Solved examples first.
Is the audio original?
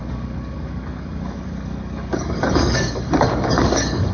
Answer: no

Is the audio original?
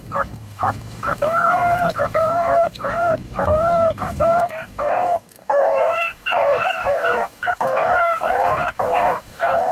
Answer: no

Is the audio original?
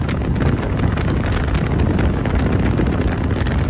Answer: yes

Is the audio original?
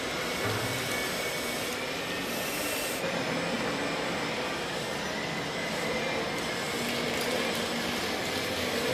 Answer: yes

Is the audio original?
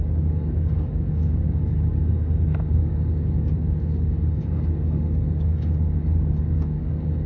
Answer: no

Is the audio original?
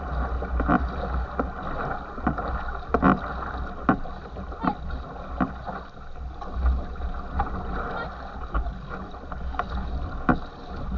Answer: yes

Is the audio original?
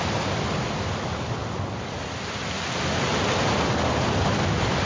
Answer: yes